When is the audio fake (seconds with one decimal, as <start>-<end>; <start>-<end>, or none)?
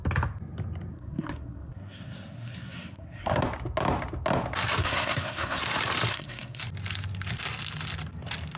0.9-3.4; 4.8-5.6; 6.1-6.6